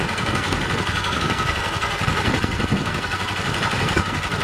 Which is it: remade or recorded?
remade